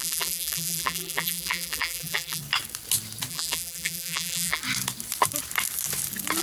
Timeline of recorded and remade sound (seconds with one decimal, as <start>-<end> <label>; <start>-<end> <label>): 0.0-2.4 remade; 2.4-3.3 recorded; 3.3-4.6 remade; 4.6-6.4 recorded